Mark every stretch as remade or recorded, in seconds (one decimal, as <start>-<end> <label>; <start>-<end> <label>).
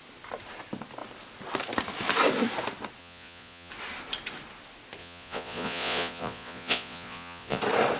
0.0-3.0 recorded; 3.0-3.7 remade; 3.7-5.0 recorded; 5.0-7.6 remade; 7.6-8.0 recorded